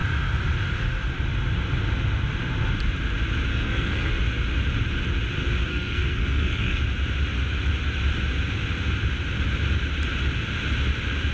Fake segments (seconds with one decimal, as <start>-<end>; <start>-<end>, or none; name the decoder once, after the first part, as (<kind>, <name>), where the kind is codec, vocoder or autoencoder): 3.5-4.1 (codec, SNAC); 5.7-6.8